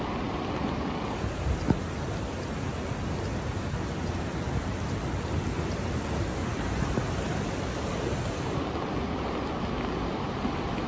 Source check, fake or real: real